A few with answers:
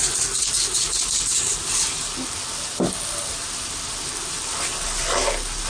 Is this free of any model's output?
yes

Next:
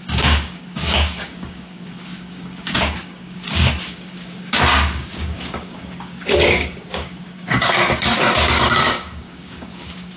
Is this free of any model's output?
no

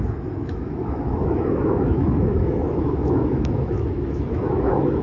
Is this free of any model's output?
no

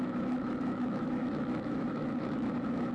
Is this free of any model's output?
no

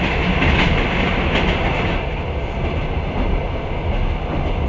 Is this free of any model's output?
yes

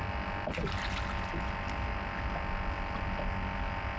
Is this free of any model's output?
yes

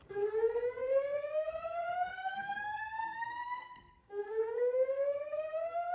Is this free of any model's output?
no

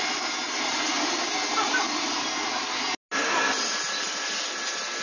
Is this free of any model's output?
yes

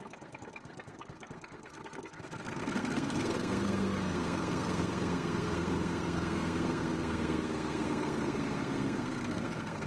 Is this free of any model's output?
no